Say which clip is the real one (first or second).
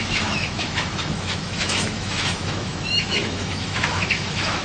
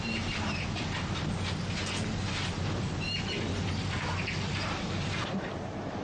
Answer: second